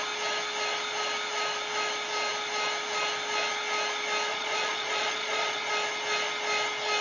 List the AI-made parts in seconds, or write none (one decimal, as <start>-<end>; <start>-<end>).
4.3-5.7